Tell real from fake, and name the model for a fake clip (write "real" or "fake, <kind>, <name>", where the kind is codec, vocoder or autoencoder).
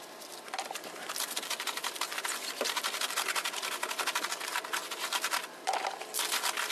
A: real